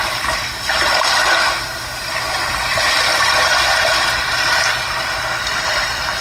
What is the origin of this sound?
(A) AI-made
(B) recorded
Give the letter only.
B